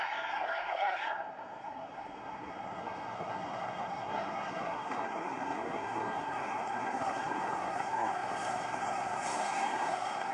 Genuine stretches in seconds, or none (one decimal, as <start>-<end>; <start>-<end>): none